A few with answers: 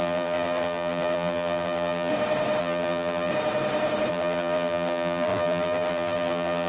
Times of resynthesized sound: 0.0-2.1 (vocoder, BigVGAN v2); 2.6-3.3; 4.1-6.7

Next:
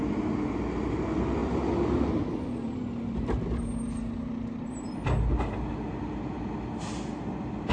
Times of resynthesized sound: none

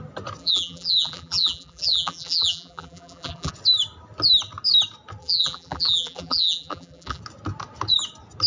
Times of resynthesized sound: 0.4-3.5 (vocoder, BigVGAN v2); 5.2-7.2

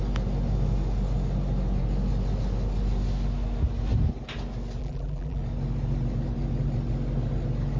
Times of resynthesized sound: 4.8-5.4 (vocoder, BigVGAN v2)

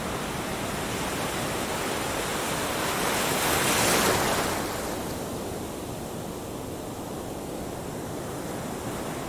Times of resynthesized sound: none

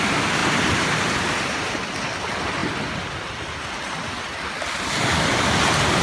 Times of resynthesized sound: 0.4-1.7 (vocoder, BigVGAN v2)

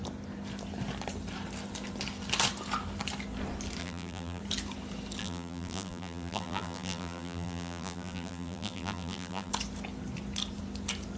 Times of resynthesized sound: 3.8-4.4 (vocoder, BigVGAN v2); 5.2-9.5